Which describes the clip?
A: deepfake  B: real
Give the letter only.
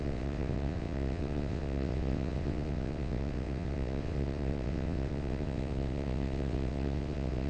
A